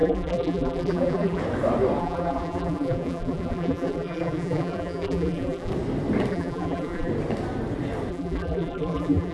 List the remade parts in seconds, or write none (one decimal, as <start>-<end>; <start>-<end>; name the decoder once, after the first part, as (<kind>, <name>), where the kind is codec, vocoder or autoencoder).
0.0-1.4 (vocoder, BigVGAN v2); 2.0-5.7; 6.3-7.1; 8.1-9.3

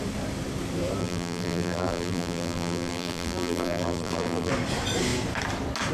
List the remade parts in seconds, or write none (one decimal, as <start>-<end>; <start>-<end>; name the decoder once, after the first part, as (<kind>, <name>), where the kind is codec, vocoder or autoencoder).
1.0-4.5 (vocoder, BigVGAN v2)

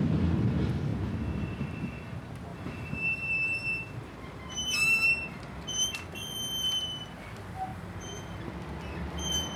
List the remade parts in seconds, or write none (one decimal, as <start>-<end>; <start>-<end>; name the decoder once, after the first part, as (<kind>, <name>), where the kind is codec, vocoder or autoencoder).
2.5-5.9 (vocoder, BigVGAN v2); 7.7-8.4

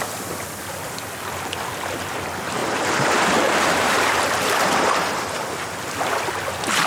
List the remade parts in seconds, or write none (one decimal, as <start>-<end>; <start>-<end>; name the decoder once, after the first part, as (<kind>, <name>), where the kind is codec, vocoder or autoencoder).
2.6-5.4 (vocoder, BigVGAN v2)